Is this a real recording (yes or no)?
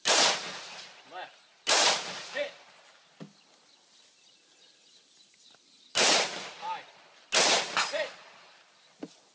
yes